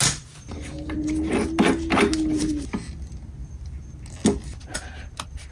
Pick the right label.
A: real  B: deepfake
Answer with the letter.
A